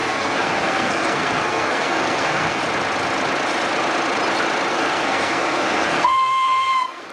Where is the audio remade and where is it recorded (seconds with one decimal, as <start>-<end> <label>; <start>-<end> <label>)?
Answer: 0.0-2.6 remade; 2.6-4.7 recorded; 4.7-7.1 remade